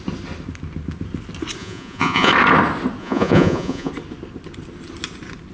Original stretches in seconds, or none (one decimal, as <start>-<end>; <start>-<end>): 0.0-1.6; 2.3-3.0; 3.9-5.5